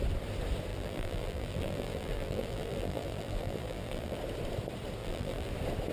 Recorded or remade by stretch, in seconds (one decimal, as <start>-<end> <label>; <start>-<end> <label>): 0.0-0.7 recorded; 0.7-4.2 remade; 4.2-5.0 recorded; 5.0-5.5 remade; 5.5-5.9 recorded